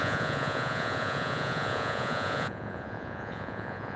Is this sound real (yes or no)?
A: no